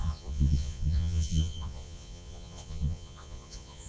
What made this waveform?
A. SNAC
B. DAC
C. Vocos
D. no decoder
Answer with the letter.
C